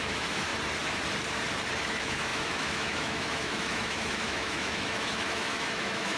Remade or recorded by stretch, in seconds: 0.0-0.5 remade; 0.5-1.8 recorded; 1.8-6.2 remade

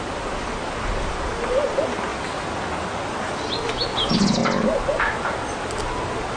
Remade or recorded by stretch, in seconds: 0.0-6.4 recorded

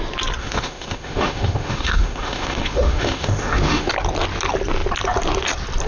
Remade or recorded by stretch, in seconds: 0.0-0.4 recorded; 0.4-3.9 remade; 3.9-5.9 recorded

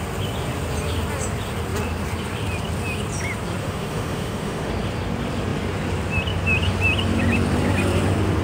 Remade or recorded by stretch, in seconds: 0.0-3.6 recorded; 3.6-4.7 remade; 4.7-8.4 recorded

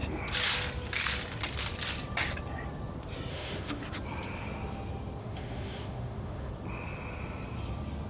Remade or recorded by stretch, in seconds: 0.0-3.3 recorded; 3.3-3.8 remade; 3.8-5.2 recorded; 5.2-6.5 remade; 6.5-8.1 recorded

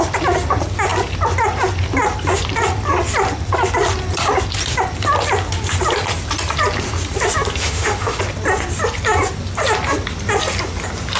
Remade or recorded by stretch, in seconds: 0.0-7.6 recorded; 7.6-8.2 remade; 8.2-11.2 recorded

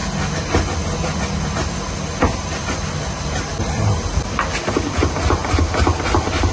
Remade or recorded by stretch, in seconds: 0.0-6.5 recorded

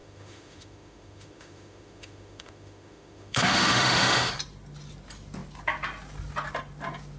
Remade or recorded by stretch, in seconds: 0.0-4.3 remade; 4.3-7.2 recorded